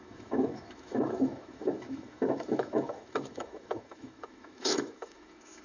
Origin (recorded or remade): remade